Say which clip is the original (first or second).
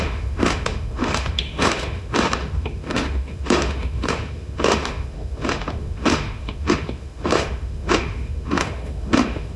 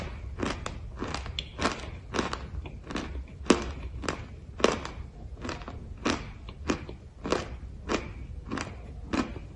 second